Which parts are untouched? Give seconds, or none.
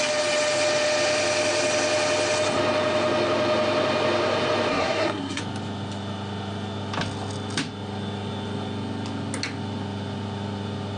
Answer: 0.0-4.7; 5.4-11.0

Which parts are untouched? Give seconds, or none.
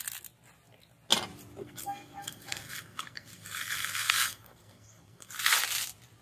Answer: 0.0-1.6; 5.3-6.2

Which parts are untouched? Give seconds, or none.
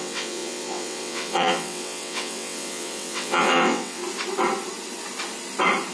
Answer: 4.0-5.9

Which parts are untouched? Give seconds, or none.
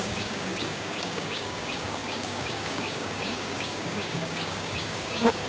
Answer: none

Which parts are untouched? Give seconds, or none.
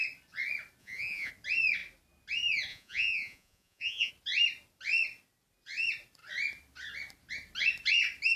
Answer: 0.0-0.8; 1.3-2.7; 4.1-8.4